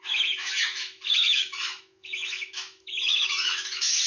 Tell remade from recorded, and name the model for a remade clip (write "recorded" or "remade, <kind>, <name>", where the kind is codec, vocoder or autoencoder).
remade, autoencoder, DAC-VAE